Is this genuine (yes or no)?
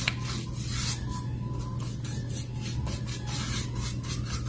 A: yes